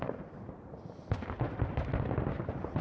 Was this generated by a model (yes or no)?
no